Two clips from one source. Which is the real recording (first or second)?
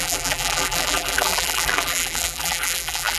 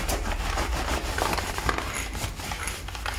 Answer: second